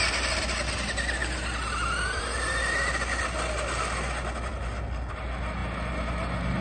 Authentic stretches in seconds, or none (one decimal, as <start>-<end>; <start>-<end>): 0.0-6.6